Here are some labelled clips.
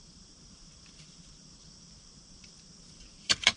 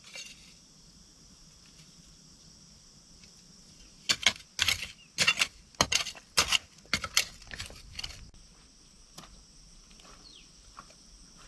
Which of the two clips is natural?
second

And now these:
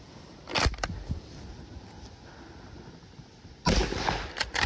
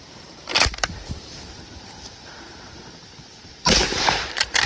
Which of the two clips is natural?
first